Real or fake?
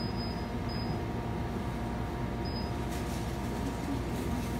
real